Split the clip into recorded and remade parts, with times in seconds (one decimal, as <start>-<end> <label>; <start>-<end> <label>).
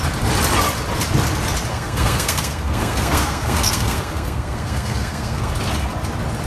0.0-1.7 recorded; 1.7-5.5 remade; 5.5-6.5 recorded